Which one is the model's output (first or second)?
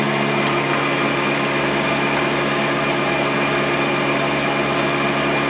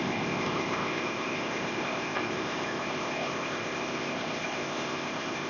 second